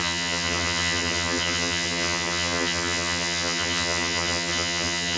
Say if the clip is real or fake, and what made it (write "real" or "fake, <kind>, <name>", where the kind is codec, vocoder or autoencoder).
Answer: fake, vocoder, HiFi-GAN